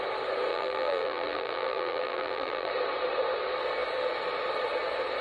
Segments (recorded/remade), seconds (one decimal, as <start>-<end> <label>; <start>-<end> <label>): 0.0-0.5 recorded; 0.5-2.7 remade; 2.7-5.2 recorded